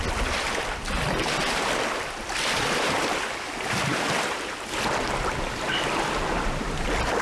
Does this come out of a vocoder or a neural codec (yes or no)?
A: no